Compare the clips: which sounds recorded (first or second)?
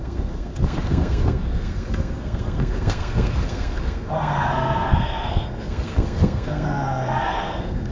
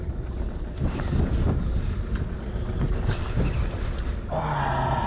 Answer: second